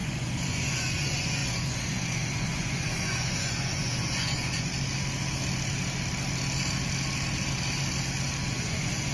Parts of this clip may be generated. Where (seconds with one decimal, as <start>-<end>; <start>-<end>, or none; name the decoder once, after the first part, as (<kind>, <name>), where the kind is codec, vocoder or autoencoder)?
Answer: 0.0-4.7 (vocoder, Vocos); 8.5-9.1